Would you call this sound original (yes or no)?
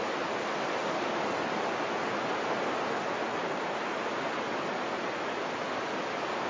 yes